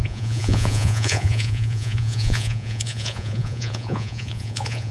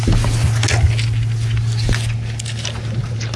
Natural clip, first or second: second